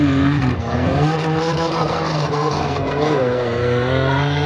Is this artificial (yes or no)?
yes